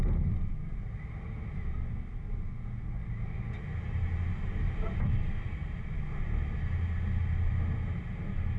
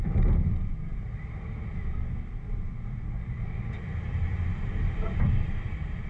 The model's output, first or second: second